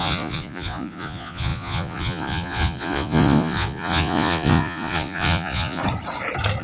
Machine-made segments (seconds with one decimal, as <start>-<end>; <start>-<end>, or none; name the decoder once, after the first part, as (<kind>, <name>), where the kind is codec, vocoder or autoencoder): 0.0-5.8 (vocoder, Vocos)